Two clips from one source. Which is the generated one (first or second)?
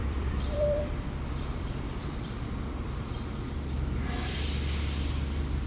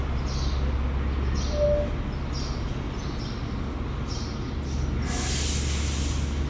first